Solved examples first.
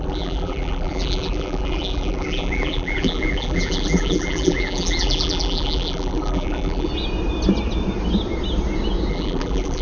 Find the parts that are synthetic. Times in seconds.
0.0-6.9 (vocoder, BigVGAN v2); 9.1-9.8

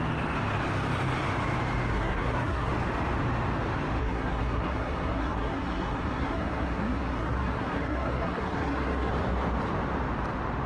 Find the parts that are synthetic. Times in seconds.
1.9-2.7 (codec, SNAC); 4.0-9.1

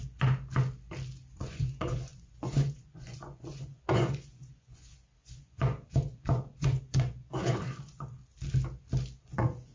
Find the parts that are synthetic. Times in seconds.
1.4-8.2 (vocoder, Vocos); 9.2-9.7

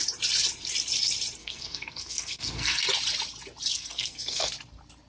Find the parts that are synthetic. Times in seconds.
1.4-2.8 (codec, SNAC); 3.7-4.5